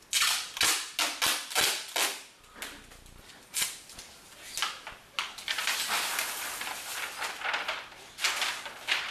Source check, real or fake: real